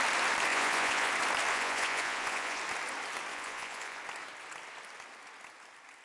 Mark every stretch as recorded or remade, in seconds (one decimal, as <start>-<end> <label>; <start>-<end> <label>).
0.0-0.5 recorded; 0.5-1.1 remade; 1.1-1.5 recorded; 1.5-2.6 remade; 2.6-3.3 recorded; 3.3-4.0 remade; 4.0-6.0 recorded